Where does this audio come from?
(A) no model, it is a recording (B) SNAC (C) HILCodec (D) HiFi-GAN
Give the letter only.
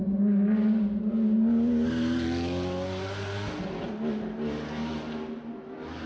A